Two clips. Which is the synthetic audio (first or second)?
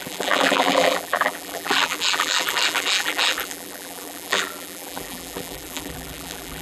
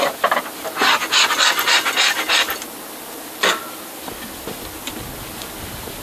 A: first